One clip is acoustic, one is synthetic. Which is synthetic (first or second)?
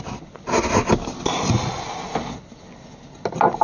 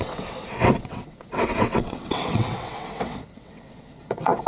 second